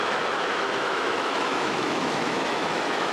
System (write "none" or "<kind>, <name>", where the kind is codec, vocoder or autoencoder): autoencoder, DAC-VAE